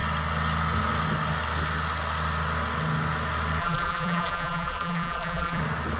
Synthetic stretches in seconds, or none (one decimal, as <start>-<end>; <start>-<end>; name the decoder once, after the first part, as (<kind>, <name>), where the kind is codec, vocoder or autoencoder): 3.6-5.6 (vocoder, BigVGAN v2)